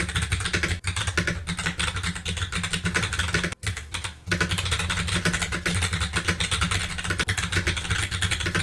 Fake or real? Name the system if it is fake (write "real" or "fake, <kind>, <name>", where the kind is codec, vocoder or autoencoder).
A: real